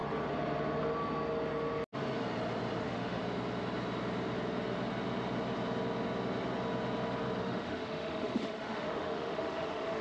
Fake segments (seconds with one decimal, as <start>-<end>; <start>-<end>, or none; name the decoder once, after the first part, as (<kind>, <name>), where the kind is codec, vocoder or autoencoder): 2.8-3.2 (autoencoder, DAC-VAE); 7.4-10.0